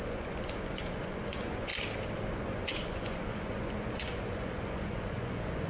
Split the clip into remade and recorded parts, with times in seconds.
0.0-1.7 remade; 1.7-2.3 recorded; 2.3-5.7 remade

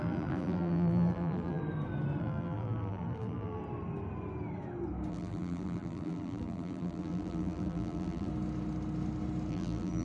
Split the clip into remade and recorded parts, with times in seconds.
0.0-1.6 remade; 1.6-2.2 recorded; 2.2-3.6 remade; 3.6-5.1 recorded; 5.1-8.3 remade; 8.3-9.5 recorded; 9.5-10.0 remade

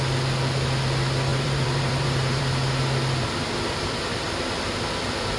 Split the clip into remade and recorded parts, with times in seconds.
0.0-1.3 recorded; 1.3-2.4 remade; 2.4-4.1 recorded; 4.1-4.6 remade; 4.6-5.4 recorded

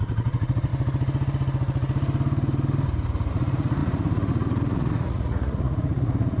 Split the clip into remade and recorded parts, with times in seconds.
0.0-0.7 remade; 0.7-3.3 recorded; 3.3-6.4 remade

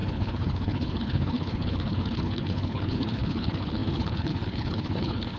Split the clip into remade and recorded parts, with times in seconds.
0.0-5.4 remade

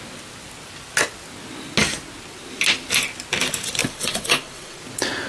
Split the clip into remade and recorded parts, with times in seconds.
0.0-3.8 recorded; 3.8-4.8 remade; 4.8-5.3 recorded

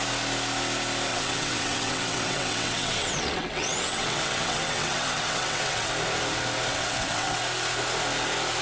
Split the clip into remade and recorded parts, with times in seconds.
0.0-1.1 recorded; 1.1-5.9 remade; 5.9-6.7 recorded; 6.7-7.4 remade; 7.4-8.6 recorded